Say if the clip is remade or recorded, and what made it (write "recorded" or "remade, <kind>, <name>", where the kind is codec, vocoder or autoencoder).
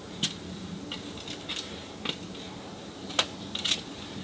recorded